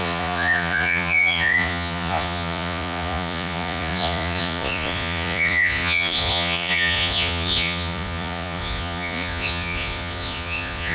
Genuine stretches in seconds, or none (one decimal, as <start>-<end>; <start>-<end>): none